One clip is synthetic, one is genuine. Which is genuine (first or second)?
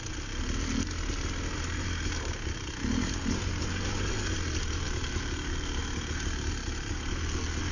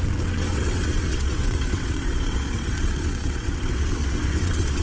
first